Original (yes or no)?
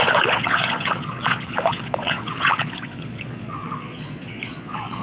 no